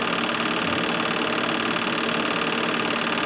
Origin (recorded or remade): recorded